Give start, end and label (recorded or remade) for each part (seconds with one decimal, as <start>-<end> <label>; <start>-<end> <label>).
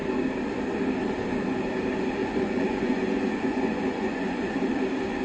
0.0-2.2 recorded; 2.2-4.5 remade; 4.5-5.2 recorded